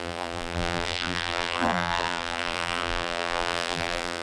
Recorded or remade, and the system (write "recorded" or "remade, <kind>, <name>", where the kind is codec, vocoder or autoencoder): remade, vocoder, BigVGAN v2